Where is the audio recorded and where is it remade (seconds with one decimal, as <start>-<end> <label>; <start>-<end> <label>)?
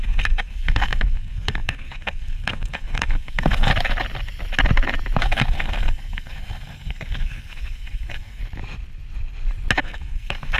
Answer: 0.0-3.7 remade; 3.7-5.2 recorded; 5.2-8.4 remade; 8.4-9.8 recorded; 9.8-10.6 remade